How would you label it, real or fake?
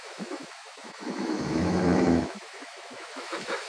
fake